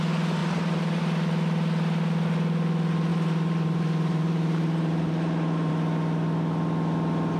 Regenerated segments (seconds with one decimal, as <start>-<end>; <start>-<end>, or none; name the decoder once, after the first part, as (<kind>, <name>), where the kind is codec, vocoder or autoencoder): 0.4-1.0 (vocoder, BigVGAN v2); 3.1-5.7